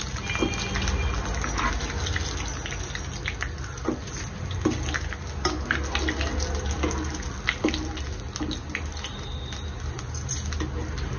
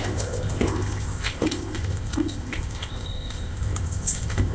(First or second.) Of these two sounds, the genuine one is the first